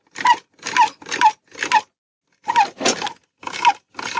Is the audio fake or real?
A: real